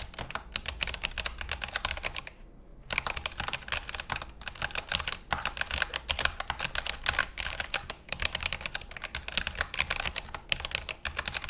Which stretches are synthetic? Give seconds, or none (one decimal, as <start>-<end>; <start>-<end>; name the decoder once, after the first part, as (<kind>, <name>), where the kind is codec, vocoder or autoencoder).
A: 7.2-8.5 (codec, DAC)